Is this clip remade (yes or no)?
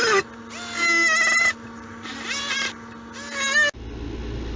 no